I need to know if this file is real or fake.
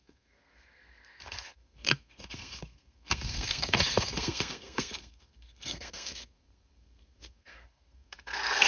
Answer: fake